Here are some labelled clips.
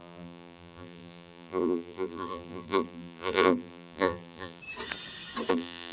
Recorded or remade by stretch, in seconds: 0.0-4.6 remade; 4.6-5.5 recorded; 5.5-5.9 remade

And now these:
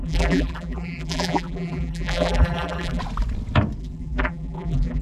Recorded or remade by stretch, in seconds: 0.0-3.0 remade; 3.0-3.8 recorded; 3.8-5.0 remade